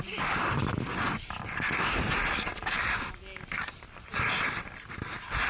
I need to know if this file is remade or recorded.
recorded